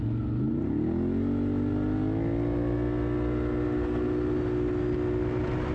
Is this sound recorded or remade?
recorded